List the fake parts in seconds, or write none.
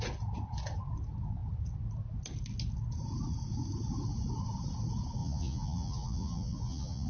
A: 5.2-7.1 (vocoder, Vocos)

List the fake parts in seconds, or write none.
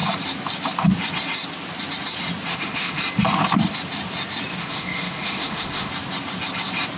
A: 2.5-3.0 (autoencoder, DAC-VAE); 4.6-5.9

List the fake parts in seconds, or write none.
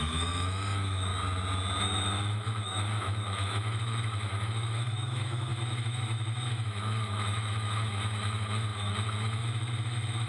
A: 0.0-1.1 (autoencoder, DAC-VAE); 1.8-10.3